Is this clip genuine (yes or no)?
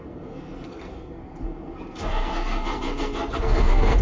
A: no